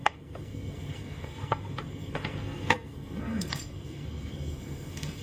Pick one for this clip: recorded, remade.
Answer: remade